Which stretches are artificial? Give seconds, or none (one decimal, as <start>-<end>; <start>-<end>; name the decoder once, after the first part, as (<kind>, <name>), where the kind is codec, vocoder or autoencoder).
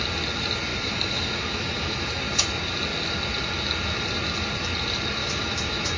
0.7-2.2 (autoencoder, DAC-VAE); 5.2-6.0